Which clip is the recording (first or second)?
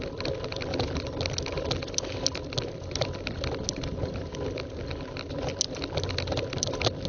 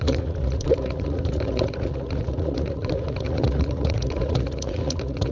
first